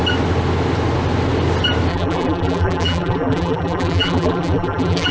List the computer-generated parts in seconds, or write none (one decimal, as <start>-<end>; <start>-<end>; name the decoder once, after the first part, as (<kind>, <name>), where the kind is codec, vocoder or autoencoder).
1.9-5.1 (vocoder, BigVGAN v2)